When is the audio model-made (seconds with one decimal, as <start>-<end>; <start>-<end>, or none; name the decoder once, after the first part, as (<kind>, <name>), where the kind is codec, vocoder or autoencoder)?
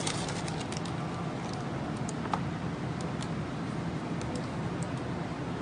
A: none